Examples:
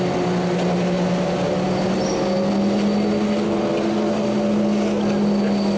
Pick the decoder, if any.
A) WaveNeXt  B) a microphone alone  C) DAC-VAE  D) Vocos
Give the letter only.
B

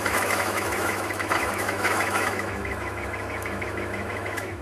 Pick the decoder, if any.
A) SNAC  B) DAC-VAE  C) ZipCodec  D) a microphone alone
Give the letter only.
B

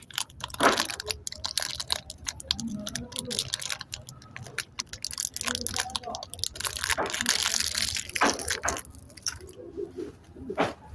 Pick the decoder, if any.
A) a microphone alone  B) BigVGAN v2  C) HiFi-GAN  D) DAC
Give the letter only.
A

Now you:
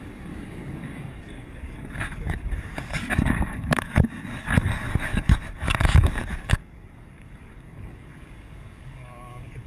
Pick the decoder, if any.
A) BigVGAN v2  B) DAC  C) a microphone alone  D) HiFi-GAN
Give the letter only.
B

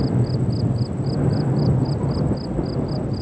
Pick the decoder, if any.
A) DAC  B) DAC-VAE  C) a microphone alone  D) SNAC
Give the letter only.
C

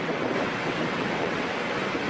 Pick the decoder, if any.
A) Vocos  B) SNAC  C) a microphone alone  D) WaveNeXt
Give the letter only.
D